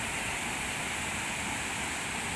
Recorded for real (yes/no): yes